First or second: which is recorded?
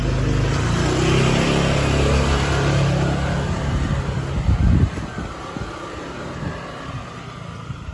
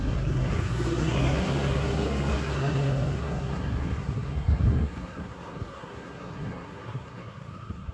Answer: first